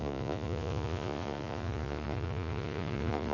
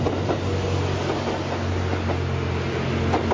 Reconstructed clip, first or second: first